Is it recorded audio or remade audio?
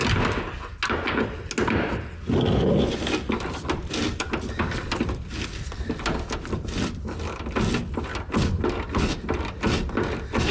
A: recorded